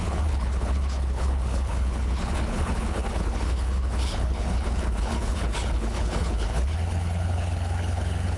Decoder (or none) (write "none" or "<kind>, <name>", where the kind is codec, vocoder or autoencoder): codec, HILCodec